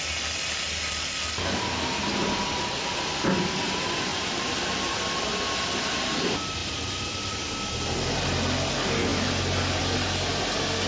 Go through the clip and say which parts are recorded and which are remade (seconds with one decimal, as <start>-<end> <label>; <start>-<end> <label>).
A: 0.0-4.1 recorded; 4.1-5.2 remade; 5.2-6.6 recorded; 6.6-7.5 remade; 7.5-10.9 recorded